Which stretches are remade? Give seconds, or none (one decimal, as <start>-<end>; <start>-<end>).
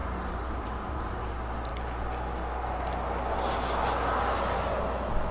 0.0-1.2